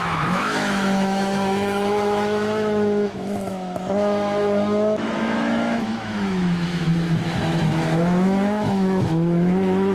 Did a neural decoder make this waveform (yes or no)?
yes